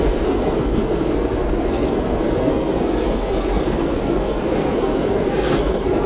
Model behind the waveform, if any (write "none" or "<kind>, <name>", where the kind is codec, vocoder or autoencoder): codec, SNAC